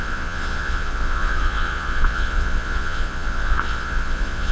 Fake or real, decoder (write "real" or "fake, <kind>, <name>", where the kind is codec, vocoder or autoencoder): fake, vocoder, Vocos